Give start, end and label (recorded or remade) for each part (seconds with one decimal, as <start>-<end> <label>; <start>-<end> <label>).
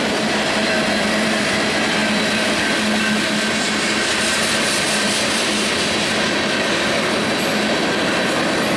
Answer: 0.0-8.8 recorded